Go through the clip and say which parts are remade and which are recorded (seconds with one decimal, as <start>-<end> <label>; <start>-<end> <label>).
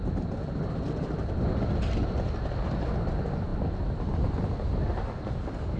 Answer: 0.0-5.8 recorded